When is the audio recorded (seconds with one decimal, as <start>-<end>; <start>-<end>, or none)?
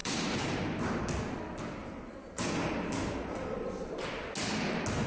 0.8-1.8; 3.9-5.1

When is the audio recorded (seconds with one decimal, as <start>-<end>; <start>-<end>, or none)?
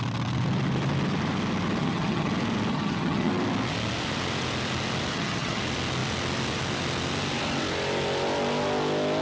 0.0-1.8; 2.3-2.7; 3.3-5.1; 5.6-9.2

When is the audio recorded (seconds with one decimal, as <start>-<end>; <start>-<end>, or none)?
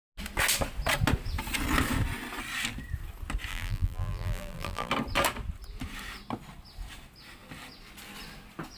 0.0-3.5; 4.9-8.8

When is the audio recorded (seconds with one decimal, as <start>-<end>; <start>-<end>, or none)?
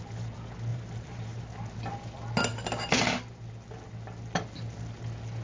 0.0-0.7; 1.4-5.4